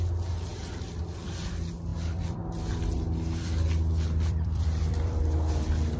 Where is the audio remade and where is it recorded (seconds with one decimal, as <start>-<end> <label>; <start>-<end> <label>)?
0.0-0.5 recorded; 0.5-1.5 remade; 1.5-1.9 recorded; 1.9-5.2 remade; 5.2-6.0 recorded